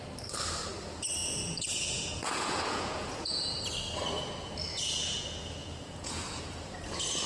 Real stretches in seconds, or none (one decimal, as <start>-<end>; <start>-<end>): 0.0-1.2; 3.6-4.7; 6.8-7.3